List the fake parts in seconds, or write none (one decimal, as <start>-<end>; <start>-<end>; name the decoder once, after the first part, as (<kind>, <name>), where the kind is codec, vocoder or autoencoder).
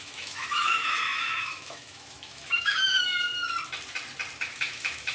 0.0-3.3 (autoencoder, DAC-VAE); 4.4-5.1